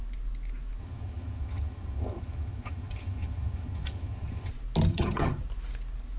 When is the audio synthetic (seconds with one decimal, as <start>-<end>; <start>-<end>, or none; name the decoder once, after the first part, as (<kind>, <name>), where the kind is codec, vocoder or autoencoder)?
0.8-4.5 (vocoder, HiFi-GAN); 4.9-5.4